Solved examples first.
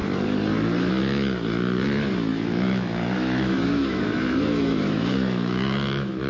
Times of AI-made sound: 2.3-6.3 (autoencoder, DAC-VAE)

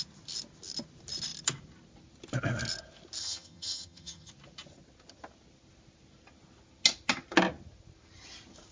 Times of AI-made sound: 3.2-4.3 (vocoder, HiFi-GAN)

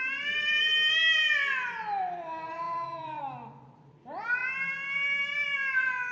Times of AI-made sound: 2.5-3.2 (vocoder, Vocos)

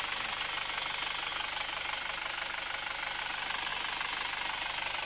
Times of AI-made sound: 1.3-3.2 (vocoder, BigVGAN v2); 3.7-5.1